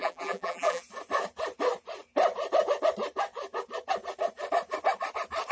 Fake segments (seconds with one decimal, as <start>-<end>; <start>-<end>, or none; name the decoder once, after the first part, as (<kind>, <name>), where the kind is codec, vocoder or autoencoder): 0.0-0.8 (vocoder, BigVGAN v2)